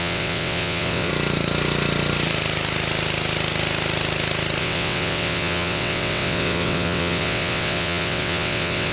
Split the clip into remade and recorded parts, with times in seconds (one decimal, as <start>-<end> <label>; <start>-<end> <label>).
0.0-1.1 remade; 1.1-4.6 recorded; 4.6-8.9 remade